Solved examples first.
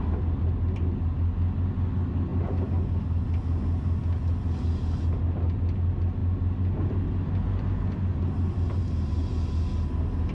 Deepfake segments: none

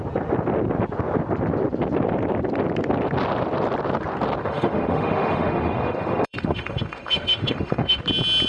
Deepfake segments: 4.4-8.0

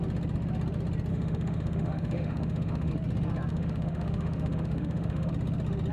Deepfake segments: 1.1-2.9; 3.5-5.3

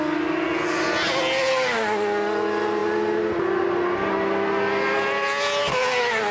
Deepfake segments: none

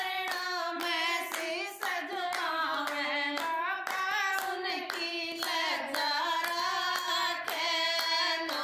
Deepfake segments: none

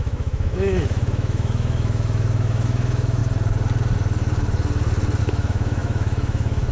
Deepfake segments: 0.0-3.2; 5.2-6.7

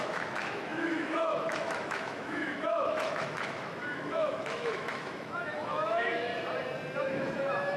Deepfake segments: 0.0-6.3; 7.0-7.8